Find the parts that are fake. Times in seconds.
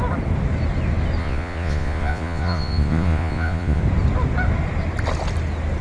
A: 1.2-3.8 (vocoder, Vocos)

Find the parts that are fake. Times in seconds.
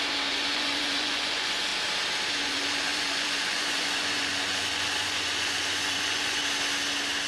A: 0.0-1.7 (vocoder, Vocos); 2.3-6.4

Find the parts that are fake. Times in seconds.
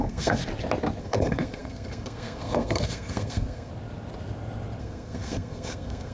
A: 0.0-0.4 (codec, SNAC); 1.0-3.7; 4.8-6.1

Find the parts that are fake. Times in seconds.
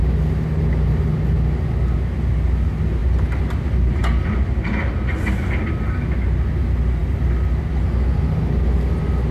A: none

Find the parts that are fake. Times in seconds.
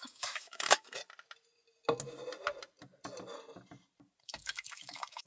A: 0.0-1.0 (autoencoder, DAC-VAE); 4.2-5.3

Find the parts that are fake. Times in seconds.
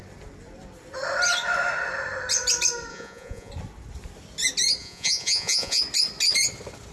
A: 2.9-3.5 (vocoder, Vocos); 4.8-5.8